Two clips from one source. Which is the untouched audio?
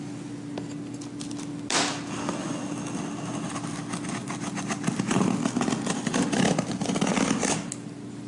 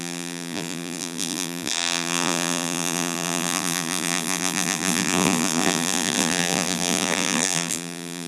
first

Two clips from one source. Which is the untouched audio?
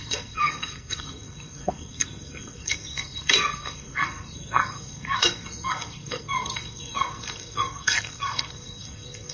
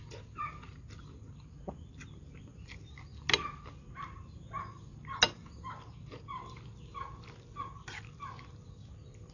second